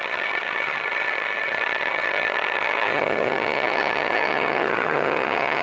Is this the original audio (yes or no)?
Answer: no